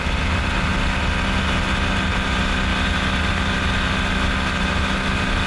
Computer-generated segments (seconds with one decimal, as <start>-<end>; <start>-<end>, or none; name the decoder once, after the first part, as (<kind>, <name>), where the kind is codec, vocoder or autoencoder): none